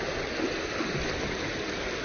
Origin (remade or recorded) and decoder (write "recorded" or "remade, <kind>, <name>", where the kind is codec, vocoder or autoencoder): recorded